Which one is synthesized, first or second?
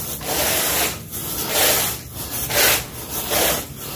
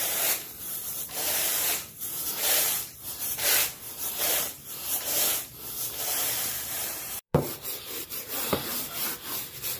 second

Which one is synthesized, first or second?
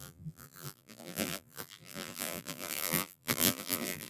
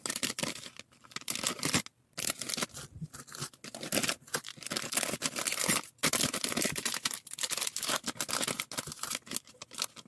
first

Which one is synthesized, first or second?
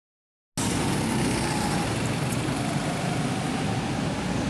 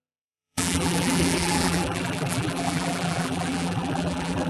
second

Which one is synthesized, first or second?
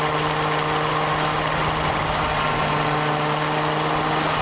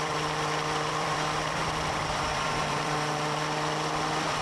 second